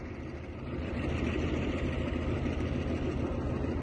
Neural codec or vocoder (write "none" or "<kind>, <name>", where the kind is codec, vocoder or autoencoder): none